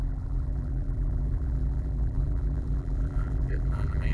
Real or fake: fake